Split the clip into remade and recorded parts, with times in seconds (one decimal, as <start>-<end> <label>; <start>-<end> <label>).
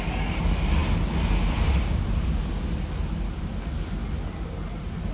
0.0-5.1 recorded